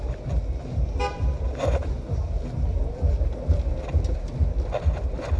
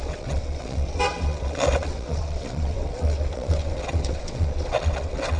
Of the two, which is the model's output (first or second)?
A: second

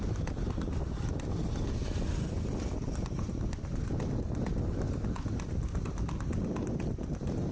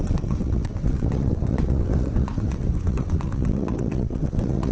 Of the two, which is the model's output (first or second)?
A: second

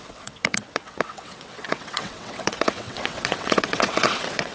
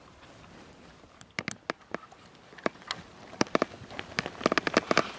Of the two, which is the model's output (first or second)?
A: first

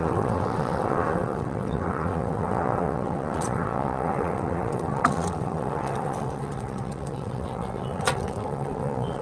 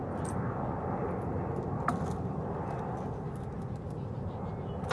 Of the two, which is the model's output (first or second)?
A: first